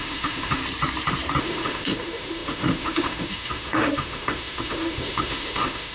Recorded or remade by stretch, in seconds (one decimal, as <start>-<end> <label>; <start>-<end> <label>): 0.0-0.6 remade; 0.6-1.4 recorded; 1.4-5.9 remade